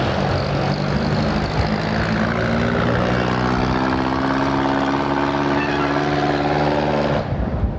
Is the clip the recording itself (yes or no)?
yes